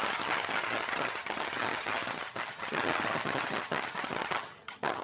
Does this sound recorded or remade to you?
remade